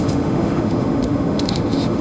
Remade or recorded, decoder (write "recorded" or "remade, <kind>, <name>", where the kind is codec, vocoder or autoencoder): remade, autoencoder, DAC-VAE